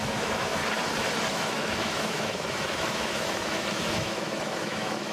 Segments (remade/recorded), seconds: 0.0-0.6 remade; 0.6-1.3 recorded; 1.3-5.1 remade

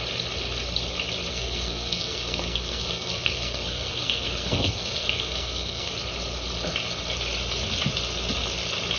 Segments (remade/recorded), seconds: 0.0-1.3 recorded; 1.3-5.9 remade; 5.9-9.0 recorded

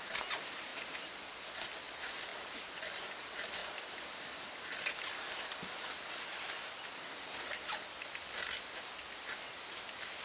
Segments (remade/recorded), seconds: 0.0-0.7 recorded; 0.7-1.7 remade; 1.7-2.3 recorded; 2.3-3.2 remade; 3.2-3.6 recorded; 3.6-8.3 remade; 8.3-10.2 recorded

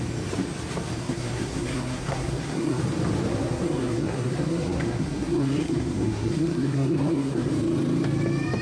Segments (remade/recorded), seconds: 0.0-1.0 recorded; 1.0-2.8 remade; 2.8-3.3 recorded; 3.3-7.5 remade; 7.5-8.6 recorded

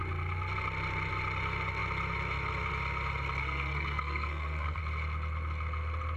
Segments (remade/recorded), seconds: 0.0-3.4 recorded; 3.4-4.8 remade; 4.8-6.2 recorded

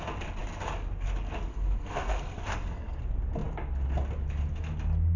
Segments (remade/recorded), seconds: 0.0-1.5 recorded; 1.5-3.0 remade; 3.0-5.2 recorded